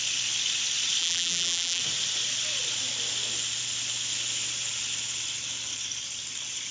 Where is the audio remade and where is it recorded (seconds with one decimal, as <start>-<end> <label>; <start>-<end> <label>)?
0.0-1.0 recorded; 1.0-1.8 remade; 1.8-6.7 recorded